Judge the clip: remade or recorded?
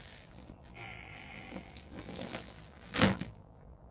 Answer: remade